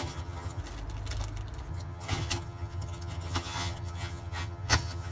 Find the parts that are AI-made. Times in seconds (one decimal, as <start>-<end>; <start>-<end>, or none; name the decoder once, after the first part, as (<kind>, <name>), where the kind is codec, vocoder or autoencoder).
0.0-0.6 (vocoder, HiFi-GAN); 1.7-5.1